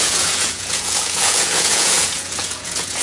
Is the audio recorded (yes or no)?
no